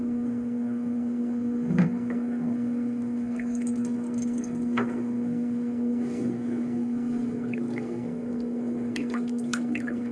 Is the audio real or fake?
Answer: fake